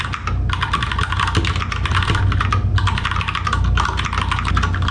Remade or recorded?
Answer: recorded